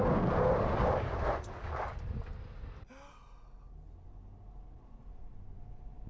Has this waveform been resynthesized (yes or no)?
no